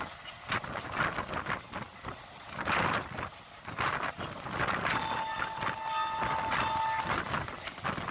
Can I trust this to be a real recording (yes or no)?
yes